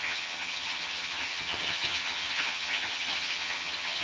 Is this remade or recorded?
remade